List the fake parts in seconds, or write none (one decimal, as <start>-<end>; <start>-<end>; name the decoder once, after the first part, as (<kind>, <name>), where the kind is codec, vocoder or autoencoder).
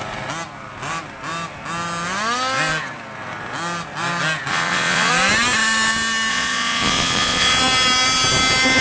4.5-5.1 (vocoder, Vocos); 6.3-7.6